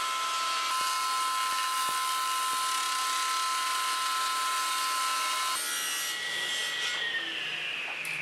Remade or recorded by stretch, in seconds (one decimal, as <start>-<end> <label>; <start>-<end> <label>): 0.0-8.2 recorded